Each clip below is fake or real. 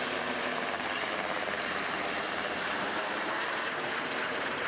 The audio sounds fake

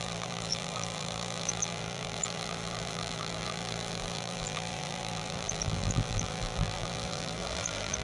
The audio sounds fake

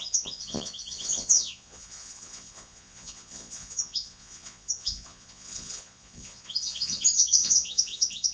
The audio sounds fake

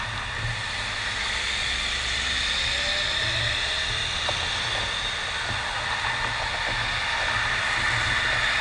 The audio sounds real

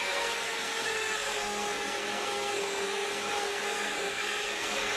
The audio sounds fake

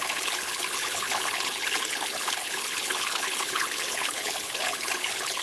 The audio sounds fake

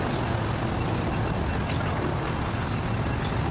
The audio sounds real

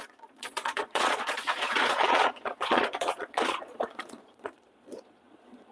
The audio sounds fake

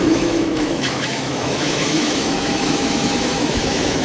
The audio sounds fake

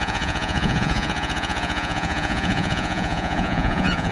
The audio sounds fake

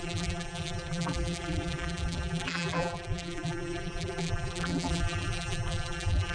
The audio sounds fake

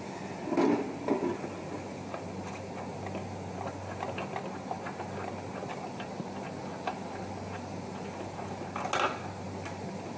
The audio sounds real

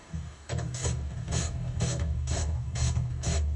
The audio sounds fake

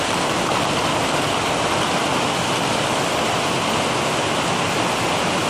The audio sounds real